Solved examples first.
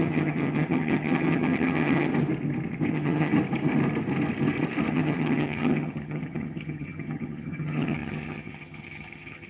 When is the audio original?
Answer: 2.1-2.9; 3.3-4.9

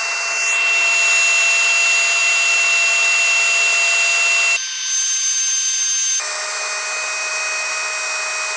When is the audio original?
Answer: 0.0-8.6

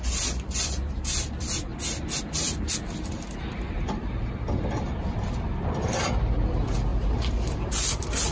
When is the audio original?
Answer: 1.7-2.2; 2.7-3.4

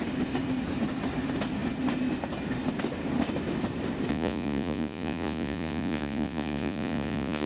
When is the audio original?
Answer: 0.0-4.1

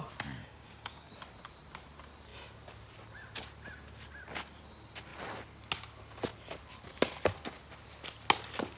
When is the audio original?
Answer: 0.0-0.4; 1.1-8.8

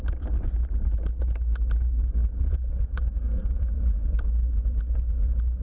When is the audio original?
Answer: 0.0-2.2; 4.0-5.6

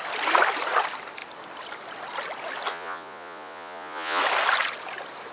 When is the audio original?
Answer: 0.0-2.7; 4.2-5.3